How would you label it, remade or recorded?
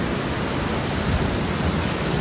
recorded